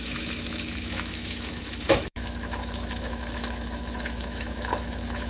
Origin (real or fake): fake